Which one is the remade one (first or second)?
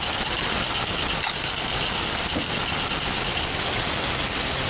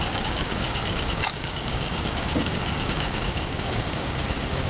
second